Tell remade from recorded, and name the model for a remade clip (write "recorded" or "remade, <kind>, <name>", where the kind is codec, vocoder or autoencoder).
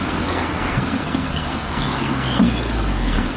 remade, codec, SNAC